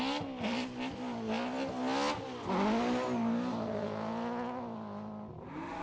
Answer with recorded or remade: recorded